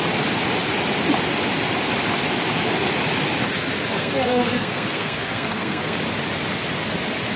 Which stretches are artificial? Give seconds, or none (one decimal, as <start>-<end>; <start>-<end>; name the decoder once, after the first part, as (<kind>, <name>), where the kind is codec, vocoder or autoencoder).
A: 3.9-6.0 (codec, SNAC)